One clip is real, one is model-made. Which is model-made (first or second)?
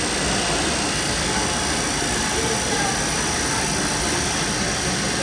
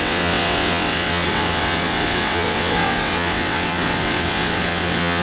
second